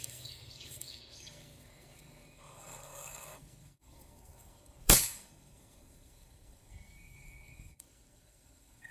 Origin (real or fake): fake